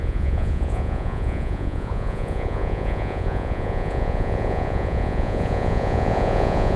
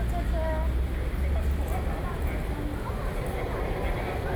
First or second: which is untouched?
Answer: second